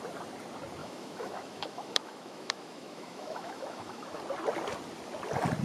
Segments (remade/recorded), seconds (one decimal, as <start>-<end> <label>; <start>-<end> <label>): 0.0-0.8 recorded; 0.8-4.2 remade; 4.2-5.6 recorded